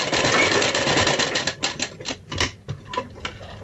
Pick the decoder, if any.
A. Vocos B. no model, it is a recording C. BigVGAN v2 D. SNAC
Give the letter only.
B